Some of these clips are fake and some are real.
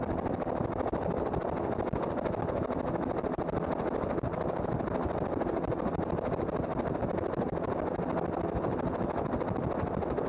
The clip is real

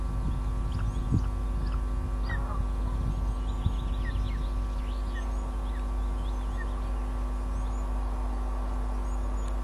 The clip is real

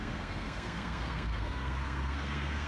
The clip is fake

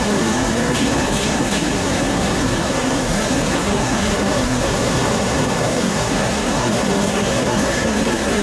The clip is fake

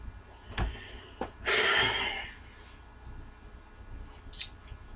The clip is real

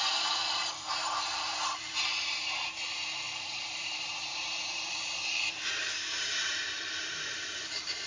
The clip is fake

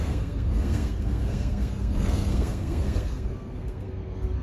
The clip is fake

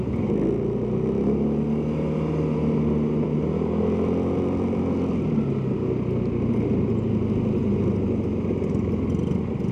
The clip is real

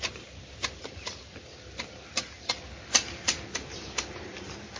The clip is real